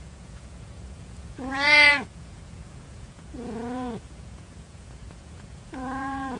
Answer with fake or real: fake